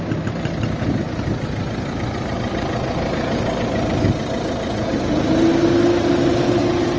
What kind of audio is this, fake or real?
real